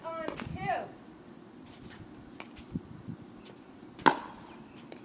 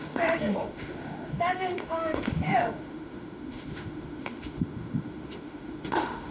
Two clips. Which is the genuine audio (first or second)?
first